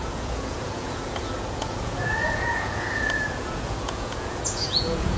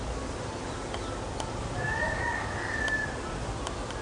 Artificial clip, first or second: first